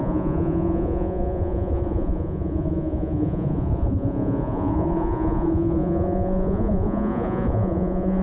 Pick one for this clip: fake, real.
fake